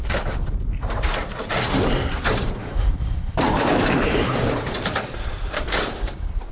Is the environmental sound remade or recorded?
remade